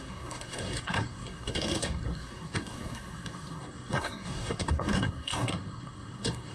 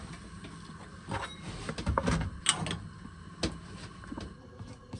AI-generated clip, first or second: first